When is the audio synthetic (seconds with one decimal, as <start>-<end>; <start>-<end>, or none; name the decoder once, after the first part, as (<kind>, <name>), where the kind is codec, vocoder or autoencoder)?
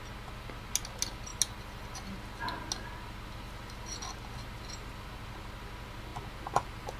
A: none